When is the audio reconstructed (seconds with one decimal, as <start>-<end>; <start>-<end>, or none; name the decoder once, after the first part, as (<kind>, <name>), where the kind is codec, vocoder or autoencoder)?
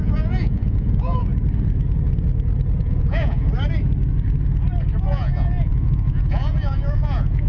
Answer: 0.0-1.3 (vocoder, Vocos); 2.8-3.5; 5.0-7.5